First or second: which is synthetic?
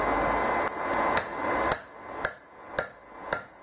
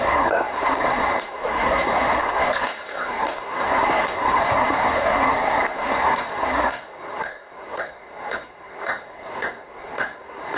second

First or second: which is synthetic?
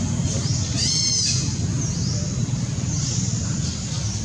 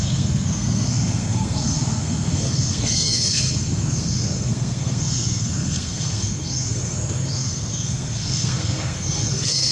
second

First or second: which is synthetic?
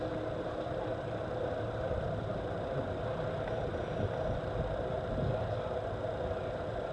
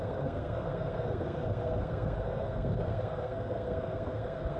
second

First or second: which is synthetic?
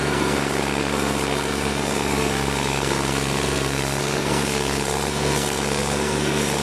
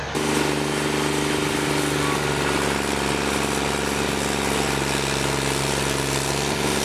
first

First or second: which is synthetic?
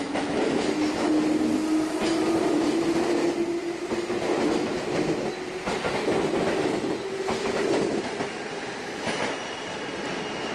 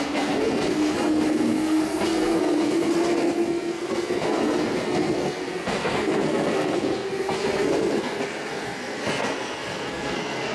second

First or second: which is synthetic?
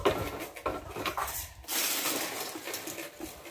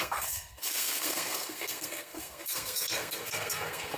second